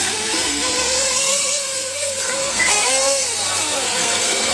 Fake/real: fake